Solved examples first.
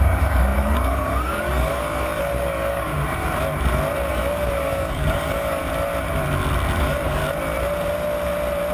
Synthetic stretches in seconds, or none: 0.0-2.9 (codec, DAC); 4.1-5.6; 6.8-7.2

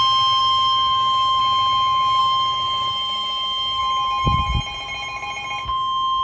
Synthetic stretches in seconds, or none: 0.4-1.4 (codec, DAC); 2.2-3.8